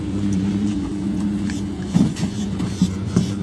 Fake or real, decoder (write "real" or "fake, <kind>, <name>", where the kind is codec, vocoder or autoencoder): fake, vocoder, Vocos